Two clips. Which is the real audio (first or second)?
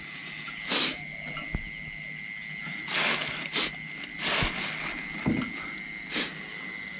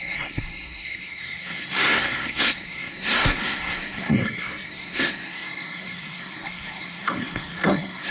first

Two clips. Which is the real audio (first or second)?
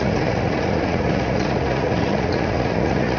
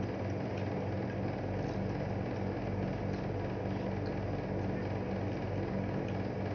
second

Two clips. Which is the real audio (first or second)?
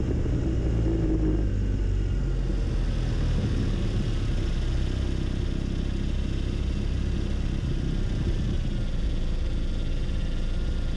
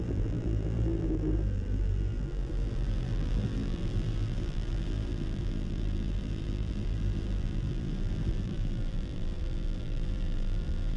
first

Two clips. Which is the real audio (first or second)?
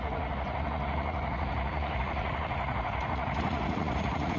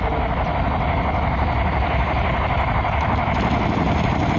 second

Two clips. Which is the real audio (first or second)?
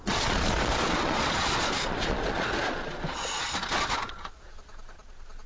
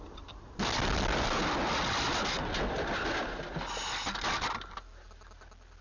second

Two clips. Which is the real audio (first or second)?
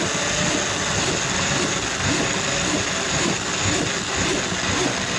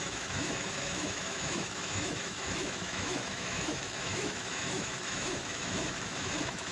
first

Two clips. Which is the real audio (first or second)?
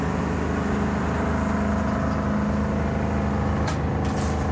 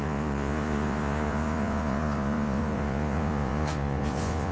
first